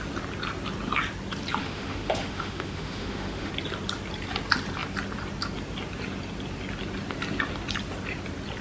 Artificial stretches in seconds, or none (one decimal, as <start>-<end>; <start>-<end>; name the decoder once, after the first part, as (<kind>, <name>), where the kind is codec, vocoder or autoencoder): 1.6-3.5 (autoencoder, DAC-VAE)